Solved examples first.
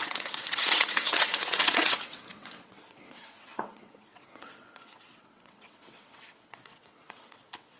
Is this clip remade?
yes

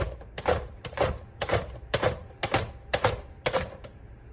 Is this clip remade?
yes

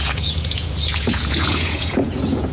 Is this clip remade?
yes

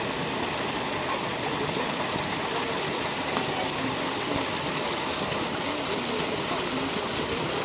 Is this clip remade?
no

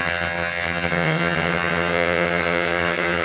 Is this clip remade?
yes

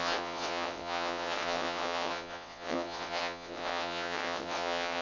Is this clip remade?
yes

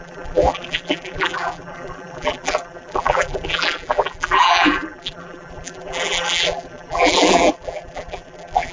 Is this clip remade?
yes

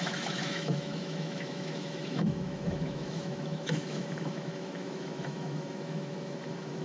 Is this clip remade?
yes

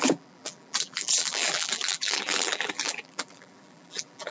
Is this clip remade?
yes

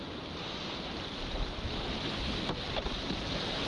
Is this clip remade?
no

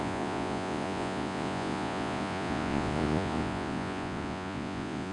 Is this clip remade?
yes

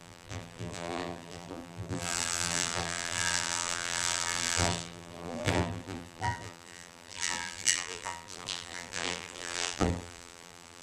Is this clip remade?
yes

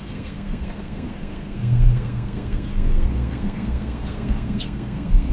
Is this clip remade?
yes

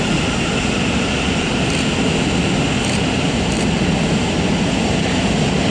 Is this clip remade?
no